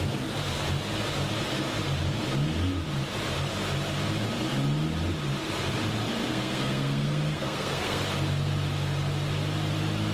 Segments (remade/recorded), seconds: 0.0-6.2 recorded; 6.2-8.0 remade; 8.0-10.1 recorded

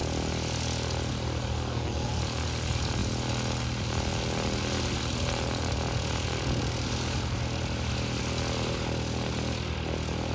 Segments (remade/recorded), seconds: 0.0-1.7 recorded; 1.7-2.2 remade; 2.2-10.3 recorded

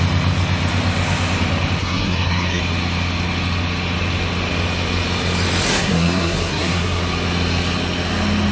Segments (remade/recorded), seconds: 0.0-1.8 recorded; 1.8-2.6 remade; 2.6-5.7 recorded; 5.7-7.0 remade; 7.0-8.5 recorded

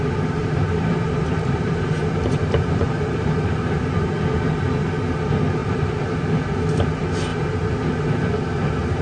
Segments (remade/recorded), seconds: 0.0-0.4 recorded; 0.4-4.1 remade; 4.1-5.6 recorded; 5.6-6.6 remade; 6.6-7.3 recorded; 7.3-9.0 remade

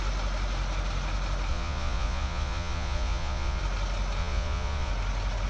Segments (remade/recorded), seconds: 0.0-1.5 recorded; 1.5-3.6 remade; 3.6-4.2 recorded; 4.2-4.9 remade; 4.9-5.5 recorded

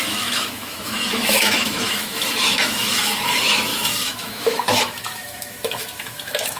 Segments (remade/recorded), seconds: 0.0-6.6 remade

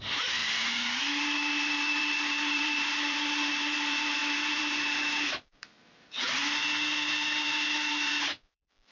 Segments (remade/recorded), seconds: 0.0-0.4 remade; 0.4-2.0 recorded; 2.0-6.4 remade; 6.4-7.9 recorded; 7.9-8.9 remade

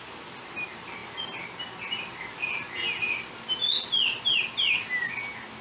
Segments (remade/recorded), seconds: 0.0-5.6 recorded